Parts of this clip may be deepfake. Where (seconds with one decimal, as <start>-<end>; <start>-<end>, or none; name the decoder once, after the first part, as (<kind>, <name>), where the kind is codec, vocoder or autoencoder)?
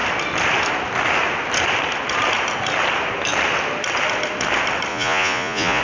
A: 4.9-5.8 (vocoder, Vocos)